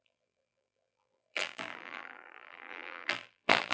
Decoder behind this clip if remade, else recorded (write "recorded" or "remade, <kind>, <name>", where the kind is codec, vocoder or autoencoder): remade, vocoder, BigVGAN v2